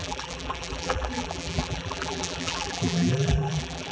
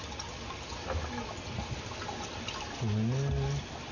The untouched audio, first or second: second